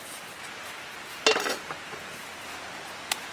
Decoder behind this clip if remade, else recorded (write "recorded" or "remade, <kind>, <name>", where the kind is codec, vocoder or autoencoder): recorded